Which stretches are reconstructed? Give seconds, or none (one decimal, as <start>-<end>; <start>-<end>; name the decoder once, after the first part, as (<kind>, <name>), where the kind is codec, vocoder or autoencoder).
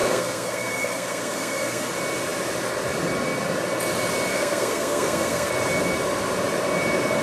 0.0-1.9 (codec, SNAC); 4.3-5.5